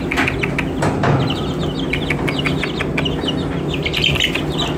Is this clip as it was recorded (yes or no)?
yes